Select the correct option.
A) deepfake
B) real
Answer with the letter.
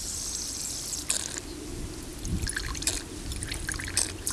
B